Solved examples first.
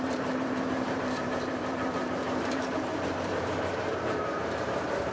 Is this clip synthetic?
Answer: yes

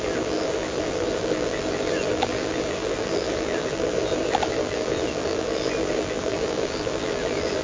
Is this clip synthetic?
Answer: yes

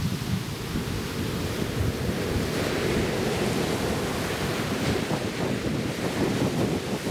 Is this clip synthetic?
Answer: no